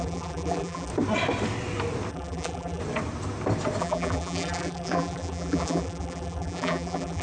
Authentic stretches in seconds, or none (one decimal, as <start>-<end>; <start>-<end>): 0.9-2.1; 2.8-3.8